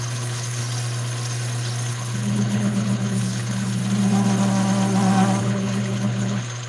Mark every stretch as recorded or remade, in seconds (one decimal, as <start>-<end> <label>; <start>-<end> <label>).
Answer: 0.0-0.6 remade; 0.6-1.9 recorded; 1.9-3.8 remade; 3.8-5.4 recorded; 5.4-6.7 remade